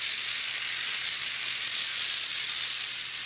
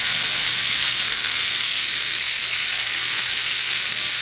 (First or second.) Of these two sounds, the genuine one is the first